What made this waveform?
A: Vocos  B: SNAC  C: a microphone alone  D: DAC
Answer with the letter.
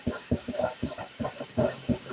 D